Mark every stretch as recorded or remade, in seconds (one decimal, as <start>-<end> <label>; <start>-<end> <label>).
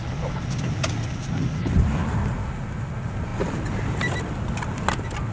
0.0-5.3 recorded